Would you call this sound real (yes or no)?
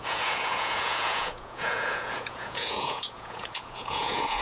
no